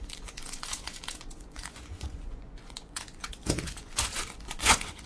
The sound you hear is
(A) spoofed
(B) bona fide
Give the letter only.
A